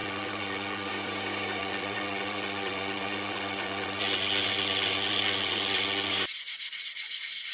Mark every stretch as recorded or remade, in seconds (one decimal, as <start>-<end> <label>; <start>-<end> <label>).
0.0-0.9 remade; 0.9-1.6 recorded; 1.6-6.1 remade; 6.1-7.5 recorded